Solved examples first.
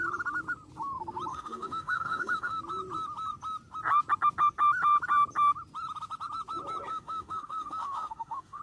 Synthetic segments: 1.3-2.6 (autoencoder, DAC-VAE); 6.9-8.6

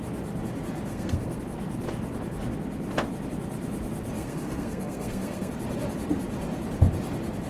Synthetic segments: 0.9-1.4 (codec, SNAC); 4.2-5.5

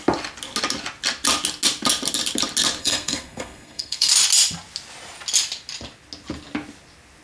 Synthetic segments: 2.8-4.1 (codec, SNAC)